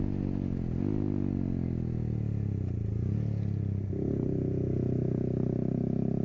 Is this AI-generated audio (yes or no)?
no